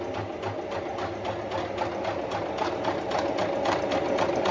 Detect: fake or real real